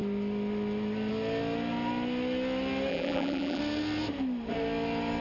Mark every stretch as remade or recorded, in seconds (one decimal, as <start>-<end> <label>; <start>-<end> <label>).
0.0-2.9 recorded; 2.9-3.6 remade; 3.6-5.2 recorded